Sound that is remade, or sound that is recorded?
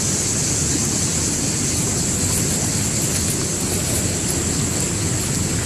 recorded